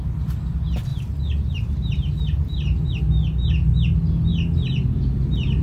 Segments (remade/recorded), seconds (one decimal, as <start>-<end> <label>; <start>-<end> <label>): 0.0-0.9 recorded; 0.9-3.0 remade; 3.0-5.6 recorded

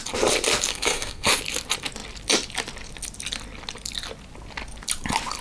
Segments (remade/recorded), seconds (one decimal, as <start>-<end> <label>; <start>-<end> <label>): 0.0-0.7 recorded; 0.7-1.3 remade; 1.3-5.4 recorded

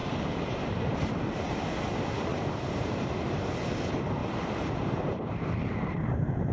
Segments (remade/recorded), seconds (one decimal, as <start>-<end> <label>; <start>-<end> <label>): 0.0-1.1 remade; 1.1-2.3 recorded; 2.3-3.5 remade; 3.5-4.2 recorded; 4.2-6.1 remade; 6.1-6.5 recorded